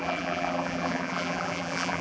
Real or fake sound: fake